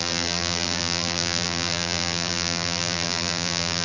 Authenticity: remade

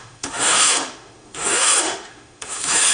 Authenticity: remade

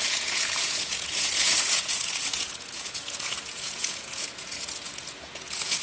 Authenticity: remade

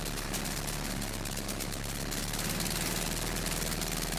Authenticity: recorded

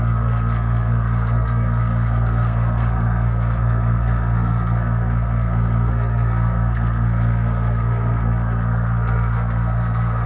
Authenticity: remade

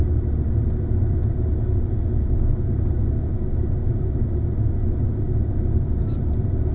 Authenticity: recorded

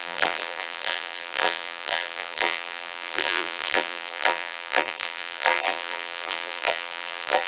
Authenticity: remade